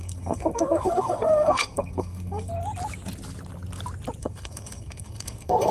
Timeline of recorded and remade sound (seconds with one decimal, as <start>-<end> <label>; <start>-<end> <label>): 0.0-2.5 remade; 2.5-4.2 recorded; 4.2-5.7 remade